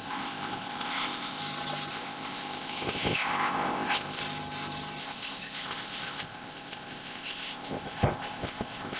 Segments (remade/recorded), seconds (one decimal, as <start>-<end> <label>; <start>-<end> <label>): 0.0-1.4 remade; 1.4-1.9 recorded; 1.9-4.2 remade; 4.2-5.0 recorded; 5.0-9.0 remade